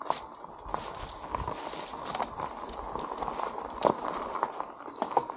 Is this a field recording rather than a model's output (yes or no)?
yes